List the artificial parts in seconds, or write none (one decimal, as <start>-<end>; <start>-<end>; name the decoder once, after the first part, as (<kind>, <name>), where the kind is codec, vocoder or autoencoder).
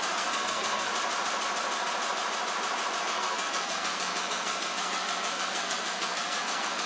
0.0-0.9 (codec, SNAC); 3.0-6.9